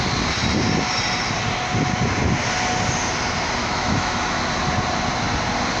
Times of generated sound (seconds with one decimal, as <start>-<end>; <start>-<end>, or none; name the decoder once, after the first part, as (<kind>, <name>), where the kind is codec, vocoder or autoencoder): 3.6-4.4 (autoencoder, DAC-VAE)